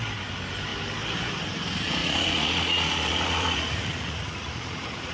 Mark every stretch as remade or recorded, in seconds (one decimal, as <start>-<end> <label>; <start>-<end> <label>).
0.0-2.0 recorded; 2.0-5.1 remade